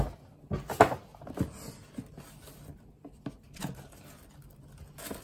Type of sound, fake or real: real